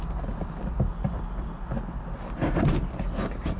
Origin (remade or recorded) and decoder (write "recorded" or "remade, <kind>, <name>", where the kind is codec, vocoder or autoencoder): recorded